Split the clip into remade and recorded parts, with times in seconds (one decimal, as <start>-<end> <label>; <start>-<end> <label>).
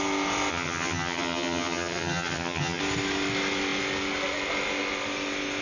0.0-0.5 recorded; 0.5-2.8 remade; 2.8-5.6 recorded